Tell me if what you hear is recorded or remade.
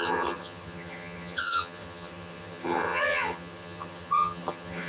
remade